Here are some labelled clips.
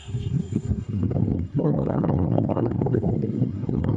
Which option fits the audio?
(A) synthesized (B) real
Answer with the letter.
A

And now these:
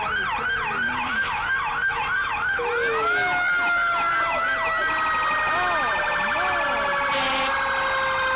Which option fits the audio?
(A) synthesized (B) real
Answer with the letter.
B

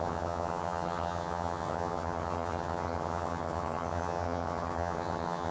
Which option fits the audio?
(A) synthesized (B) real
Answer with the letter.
A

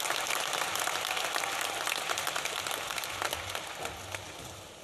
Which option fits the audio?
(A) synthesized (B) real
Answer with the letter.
B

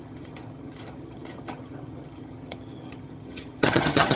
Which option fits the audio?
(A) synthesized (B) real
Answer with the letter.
A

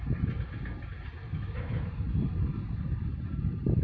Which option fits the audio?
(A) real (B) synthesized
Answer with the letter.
A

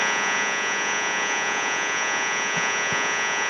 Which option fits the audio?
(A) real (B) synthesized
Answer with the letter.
B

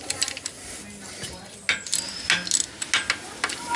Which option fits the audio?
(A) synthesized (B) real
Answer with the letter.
B